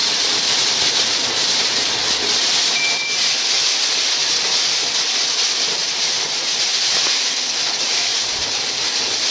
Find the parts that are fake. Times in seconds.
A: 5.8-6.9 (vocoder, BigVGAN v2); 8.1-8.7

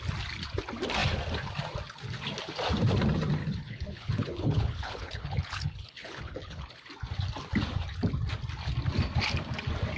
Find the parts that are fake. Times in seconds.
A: 3.4-6.9 (codec, HILCodec)

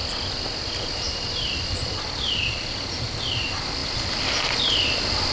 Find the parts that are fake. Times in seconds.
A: 0.0-3.2 (vocoder, BigVGAN v2)

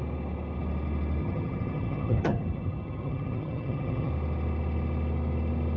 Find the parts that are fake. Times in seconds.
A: 1.2-4.1 (vocoder, HiFi-GAN)